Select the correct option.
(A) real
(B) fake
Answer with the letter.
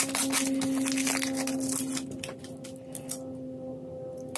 A